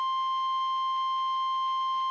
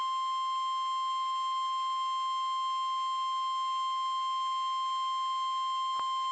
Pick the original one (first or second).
second